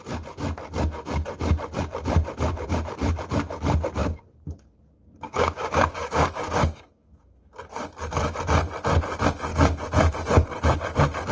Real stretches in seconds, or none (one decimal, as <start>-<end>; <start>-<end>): 0.0-4.0; 7.7-11.3